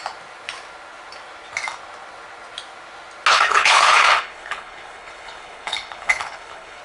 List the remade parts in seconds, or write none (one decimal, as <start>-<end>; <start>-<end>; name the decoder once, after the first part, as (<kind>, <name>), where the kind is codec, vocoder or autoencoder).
3.3-6.8 (codec, HILCodec)

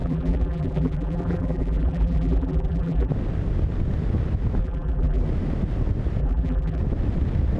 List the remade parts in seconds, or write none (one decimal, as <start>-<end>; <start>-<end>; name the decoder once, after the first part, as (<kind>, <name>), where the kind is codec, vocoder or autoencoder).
0.0-3.1 (vocoder, BigVGAN v2); 4.6-5.2; 6.2-6.8

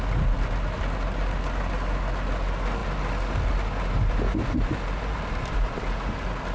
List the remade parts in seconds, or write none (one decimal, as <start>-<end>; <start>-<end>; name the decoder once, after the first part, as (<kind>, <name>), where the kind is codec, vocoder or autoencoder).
none

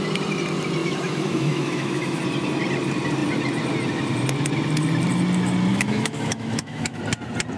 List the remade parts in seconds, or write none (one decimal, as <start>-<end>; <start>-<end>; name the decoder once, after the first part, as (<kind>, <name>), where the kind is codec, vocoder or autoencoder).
0.8-2.2 (autoencoder, DAC-VAE); 5.7-7.0